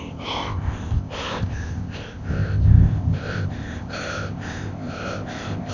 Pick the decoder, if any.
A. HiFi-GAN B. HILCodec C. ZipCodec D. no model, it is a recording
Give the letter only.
C